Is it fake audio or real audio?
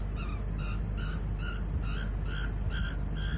real